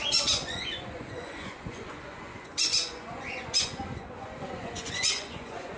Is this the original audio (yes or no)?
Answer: no